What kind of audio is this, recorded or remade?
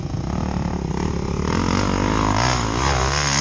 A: recorded